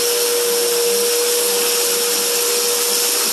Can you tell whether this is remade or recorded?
recorded